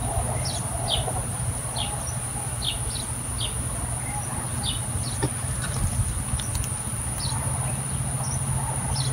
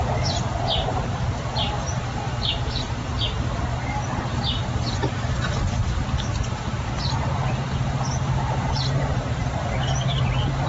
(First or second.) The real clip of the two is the first